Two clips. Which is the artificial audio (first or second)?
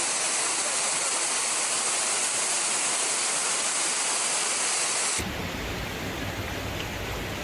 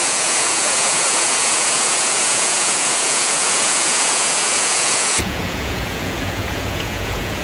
second